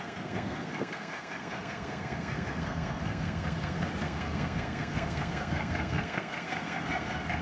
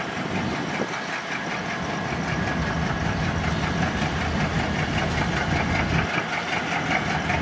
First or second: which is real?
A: second